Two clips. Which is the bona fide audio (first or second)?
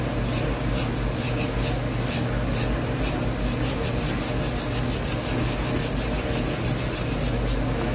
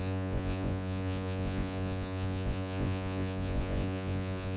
first